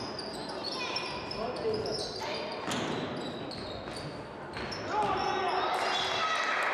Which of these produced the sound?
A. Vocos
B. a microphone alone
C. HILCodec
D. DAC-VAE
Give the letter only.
B